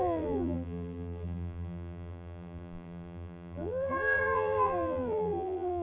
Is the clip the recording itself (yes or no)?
no